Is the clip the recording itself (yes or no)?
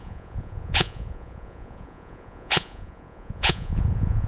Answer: no